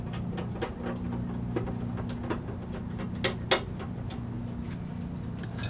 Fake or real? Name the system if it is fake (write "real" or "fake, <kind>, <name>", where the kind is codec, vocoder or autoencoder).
real